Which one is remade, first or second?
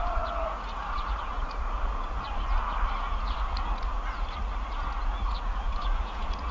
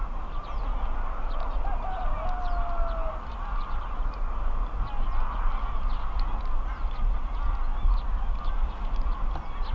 first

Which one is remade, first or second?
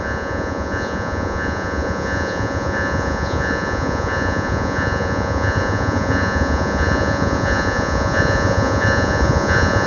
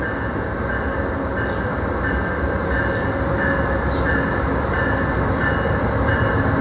first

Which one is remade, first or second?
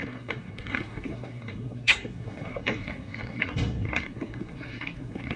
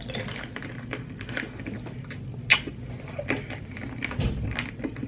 first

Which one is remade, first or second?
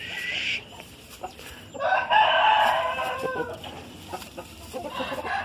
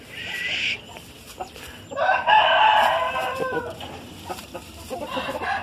first